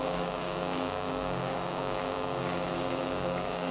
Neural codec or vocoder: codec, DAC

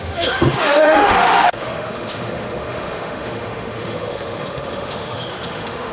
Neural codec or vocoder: autoencoder, DAC-VAE